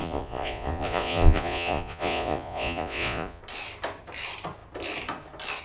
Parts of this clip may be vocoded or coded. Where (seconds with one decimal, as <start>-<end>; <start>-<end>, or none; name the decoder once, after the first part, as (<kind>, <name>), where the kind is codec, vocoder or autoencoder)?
0.0-3.4 (vocoder, Vocos)